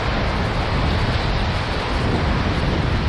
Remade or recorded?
recorded